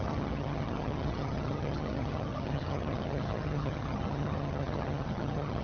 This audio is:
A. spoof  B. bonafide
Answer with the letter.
A